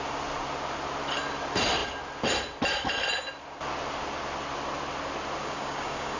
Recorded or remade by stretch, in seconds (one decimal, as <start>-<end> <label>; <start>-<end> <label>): 0.0-5.4 recorded; 5.4-6.2 remade